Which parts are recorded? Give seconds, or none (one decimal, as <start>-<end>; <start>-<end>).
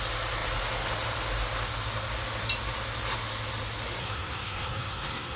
0.0-4.0